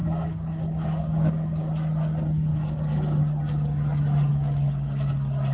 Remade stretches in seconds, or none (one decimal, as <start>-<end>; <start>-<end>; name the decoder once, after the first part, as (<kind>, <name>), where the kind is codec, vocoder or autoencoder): 0.0-1.6 (codec, DAC); 2.5-3.2; 4.3-5.1